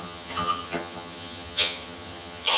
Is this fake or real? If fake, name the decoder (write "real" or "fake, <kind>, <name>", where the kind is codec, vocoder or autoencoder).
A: fake, vocoder, HiFi-GAN